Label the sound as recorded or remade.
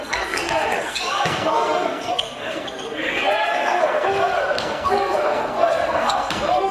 remade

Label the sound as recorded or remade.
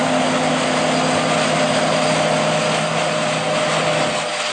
recorded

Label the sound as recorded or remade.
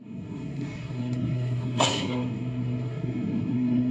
remade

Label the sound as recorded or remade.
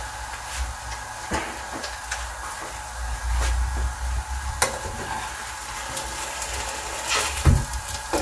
recorded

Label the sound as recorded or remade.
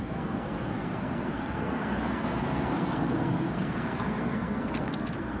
remade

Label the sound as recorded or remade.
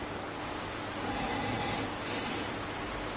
recorded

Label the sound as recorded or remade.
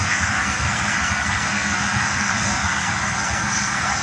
remade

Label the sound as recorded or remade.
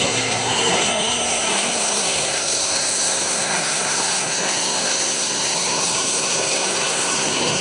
remade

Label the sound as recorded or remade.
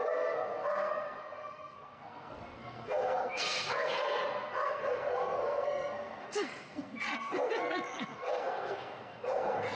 remade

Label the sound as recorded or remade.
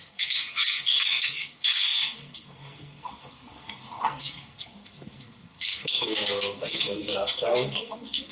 remade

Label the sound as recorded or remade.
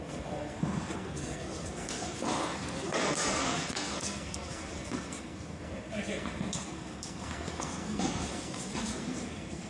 remade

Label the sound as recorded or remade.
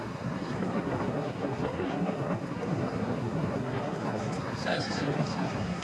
remade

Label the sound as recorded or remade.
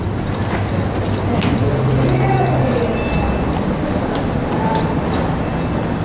recorded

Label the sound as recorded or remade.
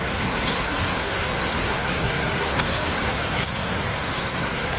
remade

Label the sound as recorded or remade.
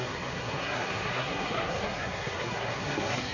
remade